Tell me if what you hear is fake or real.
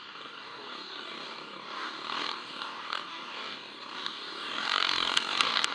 fake